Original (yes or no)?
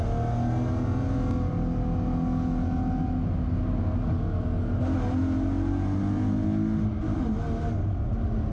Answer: yes